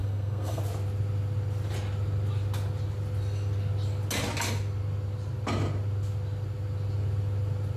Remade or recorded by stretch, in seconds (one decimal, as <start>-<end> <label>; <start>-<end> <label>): 0.0-0.6 remade; 0.6-7.8 recorded